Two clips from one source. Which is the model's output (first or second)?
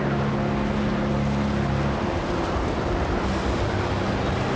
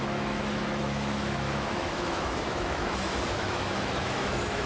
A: second